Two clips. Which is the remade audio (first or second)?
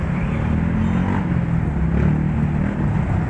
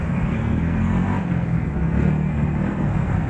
second